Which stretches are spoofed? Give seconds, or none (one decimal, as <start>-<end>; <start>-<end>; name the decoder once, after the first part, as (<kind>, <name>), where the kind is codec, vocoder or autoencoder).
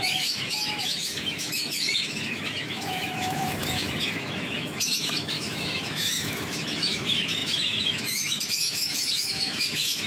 0.0-10.1 (autoencoder, DAC-VAE)